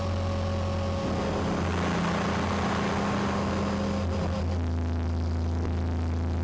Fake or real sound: real